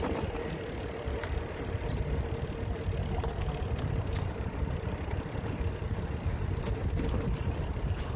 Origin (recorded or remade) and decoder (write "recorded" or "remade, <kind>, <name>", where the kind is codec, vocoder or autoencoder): recorded